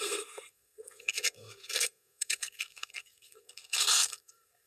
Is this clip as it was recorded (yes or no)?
no